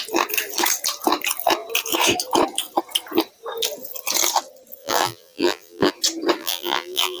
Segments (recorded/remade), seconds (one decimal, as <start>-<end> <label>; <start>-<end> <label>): 0.0-4.8 recorded; 4.8-5.9 remade; 5.9-6.4 recorded; 6.4-7.2 remade